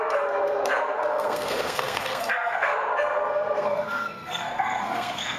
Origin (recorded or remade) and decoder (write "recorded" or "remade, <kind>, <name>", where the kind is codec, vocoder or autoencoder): remade, codec, SNAC